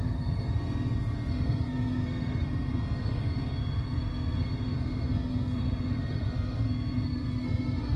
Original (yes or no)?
no